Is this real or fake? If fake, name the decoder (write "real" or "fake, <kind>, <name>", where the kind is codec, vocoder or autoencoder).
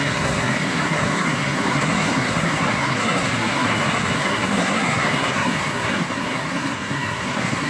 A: fake, codec, SNAC